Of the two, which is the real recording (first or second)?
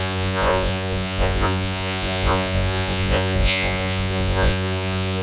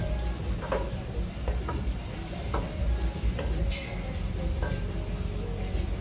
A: second